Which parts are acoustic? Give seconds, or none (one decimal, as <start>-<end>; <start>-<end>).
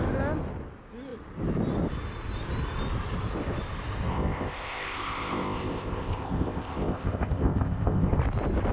0.0-4.1; 8.2-8.7